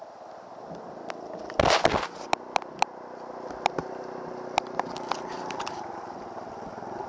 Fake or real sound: real